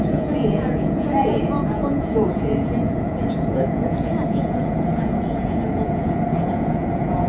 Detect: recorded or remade remade